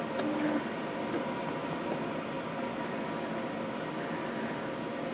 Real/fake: real